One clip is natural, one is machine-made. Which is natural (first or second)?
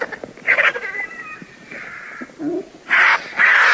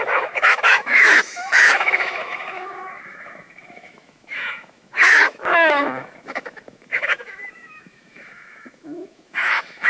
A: first